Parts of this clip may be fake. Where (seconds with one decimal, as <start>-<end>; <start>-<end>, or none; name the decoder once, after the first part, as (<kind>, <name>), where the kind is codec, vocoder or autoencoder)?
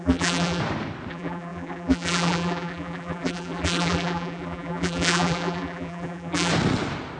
0.0-0.6 (vocoder, BigVGAN v2); 1.1-6.5